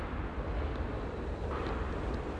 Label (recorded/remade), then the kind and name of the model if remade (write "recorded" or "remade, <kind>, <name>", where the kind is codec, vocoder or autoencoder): recorded